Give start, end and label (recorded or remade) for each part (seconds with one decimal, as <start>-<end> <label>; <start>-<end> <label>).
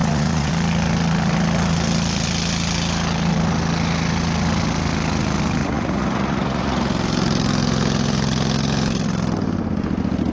0.0-0.5 remade; 0.5-5.6 recorded; 5.6-6.9 remade; 6.9-10.3 recorded